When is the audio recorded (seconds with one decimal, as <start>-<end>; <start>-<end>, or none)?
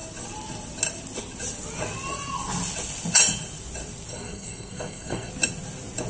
0.0-4.1; 5.3-6.1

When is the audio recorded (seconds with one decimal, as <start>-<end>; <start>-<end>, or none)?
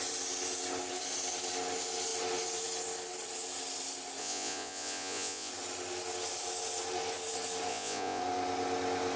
0.0-4.2; 5.5-7.7; 8.2-9.2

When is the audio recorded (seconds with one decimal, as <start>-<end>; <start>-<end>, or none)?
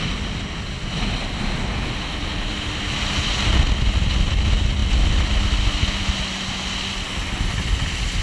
0.0-8.2